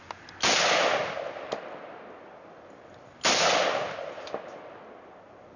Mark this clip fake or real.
real